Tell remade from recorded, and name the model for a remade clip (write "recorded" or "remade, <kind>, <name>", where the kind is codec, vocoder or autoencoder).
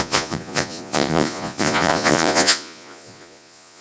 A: remade, vocoder, Vocos